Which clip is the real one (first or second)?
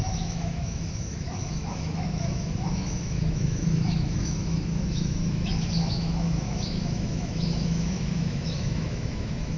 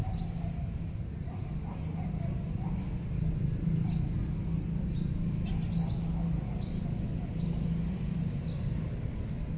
second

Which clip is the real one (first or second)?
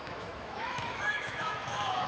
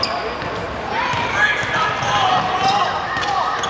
second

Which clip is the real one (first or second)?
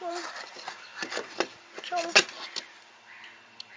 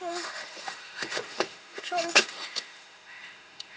first